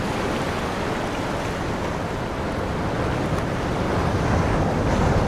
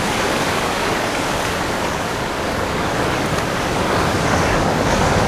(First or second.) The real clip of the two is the first